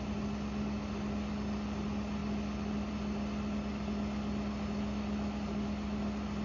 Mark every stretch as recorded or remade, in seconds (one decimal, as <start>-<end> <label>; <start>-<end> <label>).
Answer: 0.0-6.4 recorded